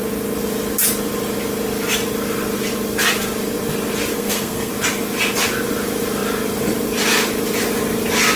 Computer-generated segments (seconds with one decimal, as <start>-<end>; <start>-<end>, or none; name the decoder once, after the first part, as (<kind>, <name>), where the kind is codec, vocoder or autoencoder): 4.1-4.7 (codec, SNAC)